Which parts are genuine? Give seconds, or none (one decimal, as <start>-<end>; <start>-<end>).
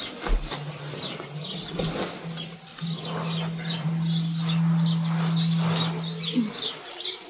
0.0-7.3